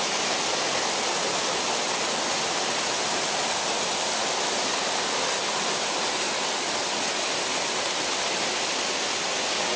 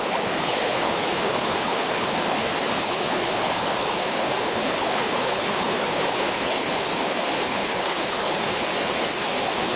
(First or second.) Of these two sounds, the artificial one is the second